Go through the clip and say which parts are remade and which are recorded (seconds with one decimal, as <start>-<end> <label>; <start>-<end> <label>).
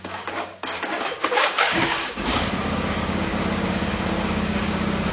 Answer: 0.0-5.1 remade